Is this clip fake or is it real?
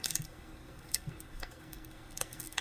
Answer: fake